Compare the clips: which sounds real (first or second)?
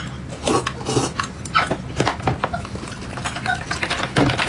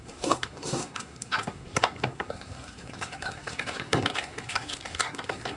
first